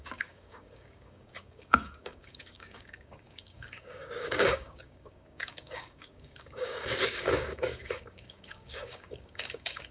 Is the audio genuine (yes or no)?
no